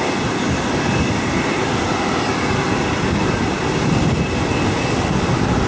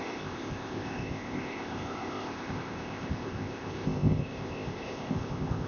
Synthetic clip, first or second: second